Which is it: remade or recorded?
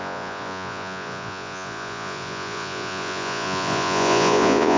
remade